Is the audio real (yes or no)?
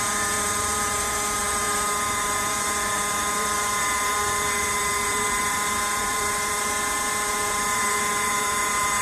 no